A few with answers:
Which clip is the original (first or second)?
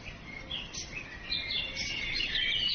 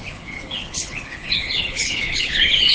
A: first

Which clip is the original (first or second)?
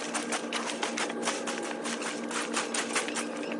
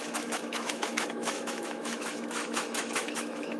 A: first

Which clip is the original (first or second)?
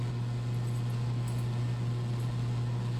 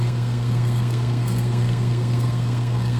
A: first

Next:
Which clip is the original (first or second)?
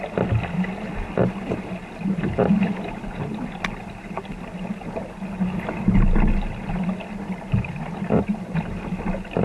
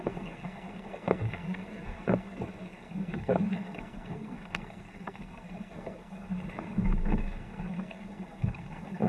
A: first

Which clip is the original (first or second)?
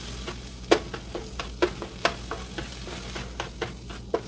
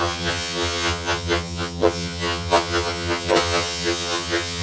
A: first